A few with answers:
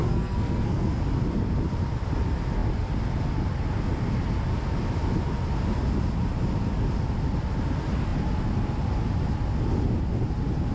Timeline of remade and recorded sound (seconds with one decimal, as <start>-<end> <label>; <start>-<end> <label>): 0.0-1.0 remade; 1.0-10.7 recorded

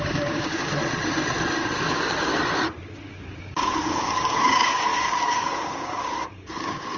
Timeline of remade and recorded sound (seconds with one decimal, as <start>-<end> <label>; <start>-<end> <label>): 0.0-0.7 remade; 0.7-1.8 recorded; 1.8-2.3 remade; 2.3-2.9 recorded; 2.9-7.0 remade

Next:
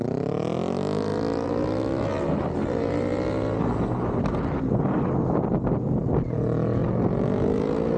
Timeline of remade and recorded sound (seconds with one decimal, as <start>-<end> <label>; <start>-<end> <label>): 0.0-8.0 recorded

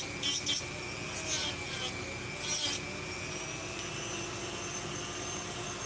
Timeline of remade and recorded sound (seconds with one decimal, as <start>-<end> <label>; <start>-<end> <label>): 0.0-5.9 recorded